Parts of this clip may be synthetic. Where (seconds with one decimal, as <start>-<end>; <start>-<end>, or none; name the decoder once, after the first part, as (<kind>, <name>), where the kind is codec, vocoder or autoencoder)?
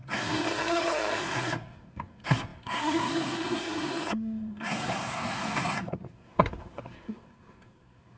0.0-8.2 (codec, SNAC)